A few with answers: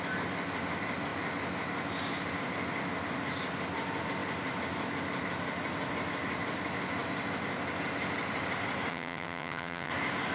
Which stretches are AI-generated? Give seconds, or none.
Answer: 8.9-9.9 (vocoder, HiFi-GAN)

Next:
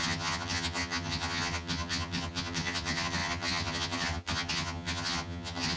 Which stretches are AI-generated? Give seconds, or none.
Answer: 0.0-5.8 (vocoder, HiFi-GAN)